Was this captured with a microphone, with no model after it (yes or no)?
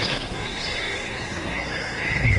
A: no